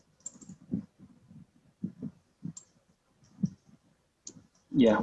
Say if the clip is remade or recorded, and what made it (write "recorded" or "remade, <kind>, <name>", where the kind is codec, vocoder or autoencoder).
recorded